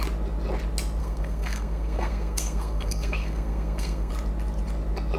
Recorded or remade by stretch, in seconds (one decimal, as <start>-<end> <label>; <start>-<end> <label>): 0.0-1.0 recorded; 1.0-4.1 remade; 4.1-5.2 recorded